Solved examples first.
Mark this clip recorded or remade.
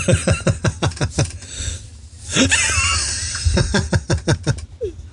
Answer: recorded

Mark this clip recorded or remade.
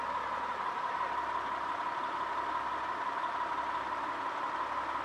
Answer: recorded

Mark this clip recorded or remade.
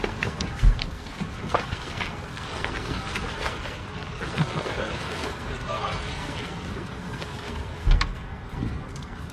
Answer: remade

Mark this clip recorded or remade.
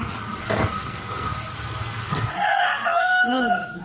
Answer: remade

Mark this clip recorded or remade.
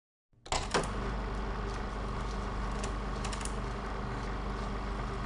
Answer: recorded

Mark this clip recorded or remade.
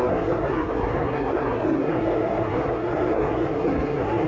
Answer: remade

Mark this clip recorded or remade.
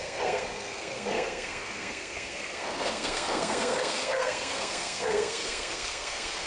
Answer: remade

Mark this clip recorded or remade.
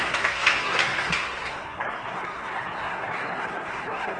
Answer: remade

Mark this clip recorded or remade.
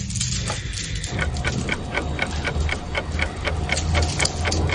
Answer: recorded